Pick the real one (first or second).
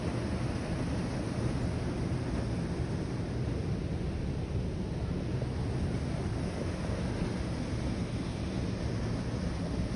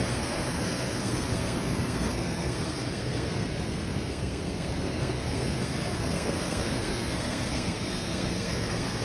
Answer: first